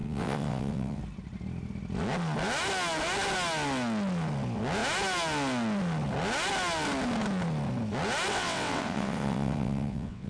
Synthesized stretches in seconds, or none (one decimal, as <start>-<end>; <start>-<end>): 0.0-1.0; 8.3-10.3